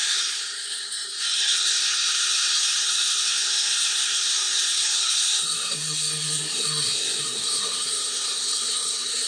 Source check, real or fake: fake